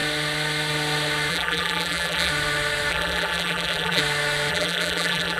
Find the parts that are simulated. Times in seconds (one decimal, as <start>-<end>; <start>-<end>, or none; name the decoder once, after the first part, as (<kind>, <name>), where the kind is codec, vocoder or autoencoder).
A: 1.3-2.3 (vocoder, BigVGAN v2); 2.9-4.0; 4.5-5.4